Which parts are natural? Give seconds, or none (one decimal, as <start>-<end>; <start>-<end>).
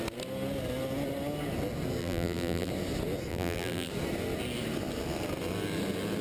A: 0.0-2.0; 2.7-3.3; 3.9-6.2